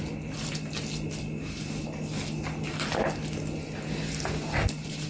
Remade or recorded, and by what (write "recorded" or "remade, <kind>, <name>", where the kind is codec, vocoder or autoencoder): recorded